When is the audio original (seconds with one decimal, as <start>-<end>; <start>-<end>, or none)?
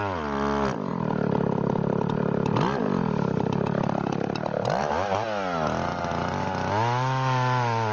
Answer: 0.0-7.9